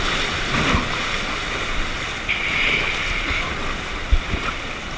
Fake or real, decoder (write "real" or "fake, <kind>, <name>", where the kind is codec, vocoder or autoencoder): real